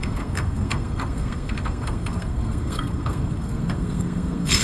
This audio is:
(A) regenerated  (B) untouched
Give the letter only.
A